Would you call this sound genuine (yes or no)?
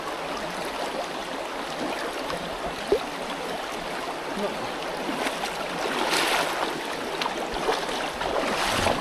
yes